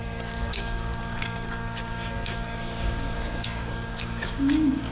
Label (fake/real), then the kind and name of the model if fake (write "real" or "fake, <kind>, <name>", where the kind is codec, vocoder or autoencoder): fake, codec, DAC